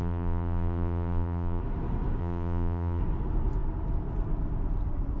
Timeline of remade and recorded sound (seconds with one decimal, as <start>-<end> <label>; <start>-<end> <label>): 0.0-1.6 remade; 1.6-2.2 recorded; 2.2-3.0 remade; 3.0-5.2 recorded